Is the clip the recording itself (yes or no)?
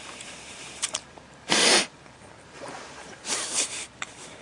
no